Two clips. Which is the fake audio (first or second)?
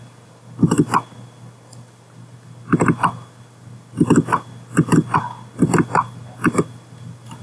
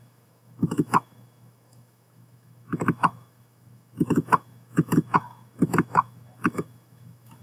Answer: second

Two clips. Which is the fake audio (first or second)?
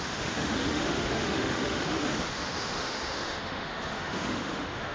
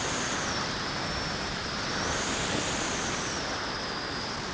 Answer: first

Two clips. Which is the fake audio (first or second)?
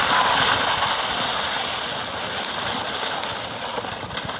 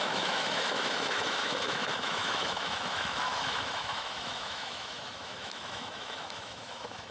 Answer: second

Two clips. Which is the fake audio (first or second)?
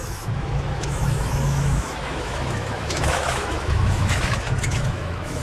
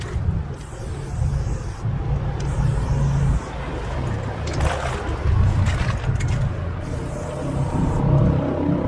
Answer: first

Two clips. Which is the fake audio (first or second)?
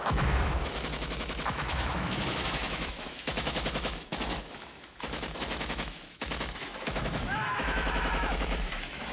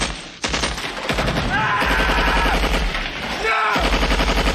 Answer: first